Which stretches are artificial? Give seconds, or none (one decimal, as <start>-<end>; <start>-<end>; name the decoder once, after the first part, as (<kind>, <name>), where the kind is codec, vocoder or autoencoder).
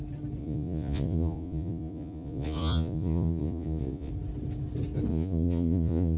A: 0.4-4.1 (vocoder, Vocos); 5.1-6.2